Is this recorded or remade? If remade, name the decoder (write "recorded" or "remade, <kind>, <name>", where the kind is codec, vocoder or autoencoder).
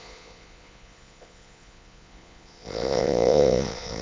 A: remade, vocoder, Vocos